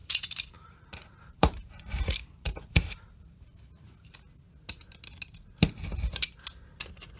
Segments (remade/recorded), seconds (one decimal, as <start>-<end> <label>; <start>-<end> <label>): 0.0-4.3 remade; 4.3-7.2 recorded